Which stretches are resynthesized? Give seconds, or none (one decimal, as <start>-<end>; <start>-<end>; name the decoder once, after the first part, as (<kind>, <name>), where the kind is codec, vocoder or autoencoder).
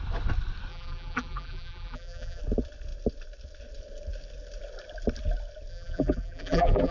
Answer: 0.7-2.4 (vocoder, BigVGAN v2); 5.7-6.9